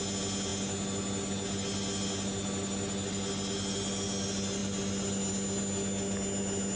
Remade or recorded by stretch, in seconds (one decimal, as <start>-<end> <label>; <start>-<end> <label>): 0.0-6.8 recorded